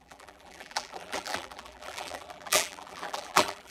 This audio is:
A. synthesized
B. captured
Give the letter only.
A